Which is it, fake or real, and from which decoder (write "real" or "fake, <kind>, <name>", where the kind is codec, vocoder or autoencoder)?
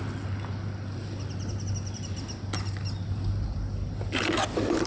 real